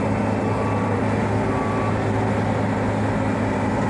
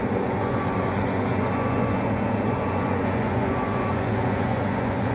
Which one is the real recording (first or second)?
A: first